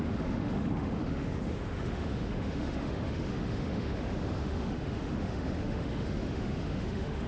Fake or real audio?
fake